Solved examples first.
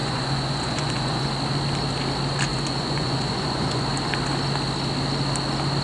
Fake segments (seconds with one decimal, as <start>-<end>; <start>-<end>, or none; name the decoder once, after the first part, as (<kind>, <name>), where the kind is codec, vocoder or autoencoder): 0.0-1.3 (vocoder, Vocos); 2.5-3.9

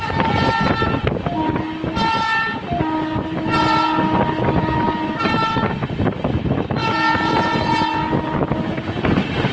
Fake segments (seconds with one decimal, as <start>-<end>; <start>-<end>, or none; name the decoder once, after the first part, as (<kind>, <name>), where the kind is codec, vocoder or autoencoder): 6.8-7.7 (vocoder, Vocos)

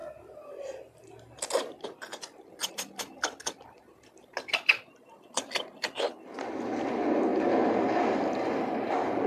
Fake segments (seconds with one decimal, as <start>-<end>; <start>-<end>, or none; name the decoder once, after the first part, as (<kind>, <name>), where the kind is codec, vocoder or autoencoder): none

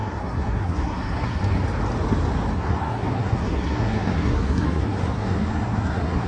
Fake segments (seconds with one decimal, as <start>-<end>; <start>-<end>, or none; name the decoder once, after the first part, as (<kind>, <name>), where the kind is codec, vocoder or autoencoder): 0.0-1.4 (codec, SNAC); 2.5-6.3

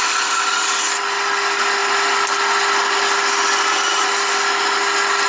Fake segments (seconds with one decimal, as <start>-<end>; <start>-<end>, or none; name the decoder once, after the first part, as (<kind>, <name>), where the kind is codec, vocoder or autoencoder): none

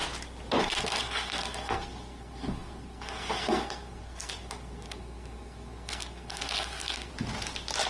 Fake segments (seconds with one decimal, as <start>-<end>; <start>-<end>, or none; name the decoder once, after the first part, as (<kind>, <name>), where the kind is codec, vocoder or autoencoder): 0.6-7.1 (codec, SNAC)

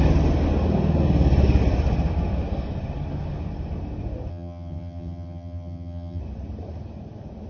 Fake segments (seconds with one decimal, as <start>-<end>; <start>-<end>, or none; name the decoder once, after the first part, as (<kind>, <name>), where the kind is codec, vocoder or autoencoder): 4.3-6.2 (vocoder, HiFi-GAN)